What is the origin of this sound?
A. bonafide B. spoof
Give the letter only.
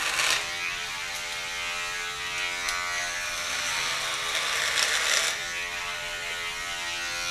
A